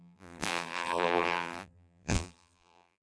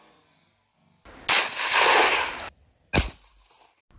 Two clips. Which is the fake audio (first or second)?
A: first